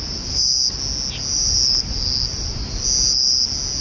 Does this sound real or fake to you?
real